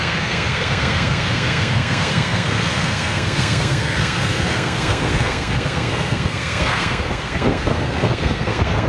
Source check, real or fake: fake